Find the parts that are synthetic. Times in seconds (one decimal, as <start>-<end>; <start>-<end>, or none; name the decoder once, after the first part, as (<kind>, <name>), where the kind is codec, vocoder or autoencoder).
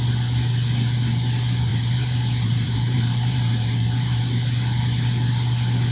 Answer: 1.7-4.2 (vocoder, BigVGAN v2)